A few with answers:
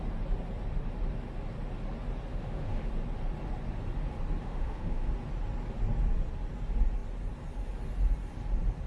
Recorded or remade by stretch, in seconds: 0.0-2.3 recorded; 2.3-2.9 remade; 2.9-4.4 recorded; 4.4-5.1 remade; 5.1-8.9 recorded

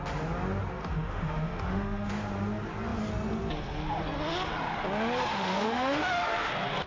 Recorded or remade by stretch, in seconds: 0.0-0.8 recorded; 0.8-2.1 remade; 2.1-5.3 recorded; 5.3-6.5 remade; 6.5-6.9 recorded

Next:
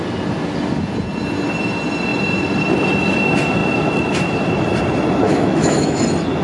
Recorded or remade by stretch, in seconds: 0.0-5.2 recorded; 5.2-6.0 remade; 6.0-6.4 recorded